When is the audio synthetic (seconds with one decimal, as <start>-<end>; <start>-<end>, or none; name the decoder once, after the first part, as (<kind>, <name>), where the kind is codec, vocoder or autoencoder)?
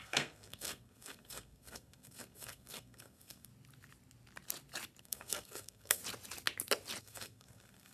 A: 0.0-3.5 (codec, SNAC); 5.0-6.0; 7.0-7.9